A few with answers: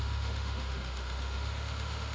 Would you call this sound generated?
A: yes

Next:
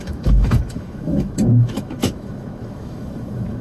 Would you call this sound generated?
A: yes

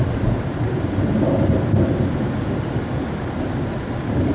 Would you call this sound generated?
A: no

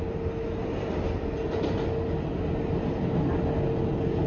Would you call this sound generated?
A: no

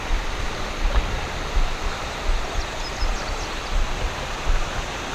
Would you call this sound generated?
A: no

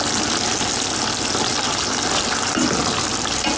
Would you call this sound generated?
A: no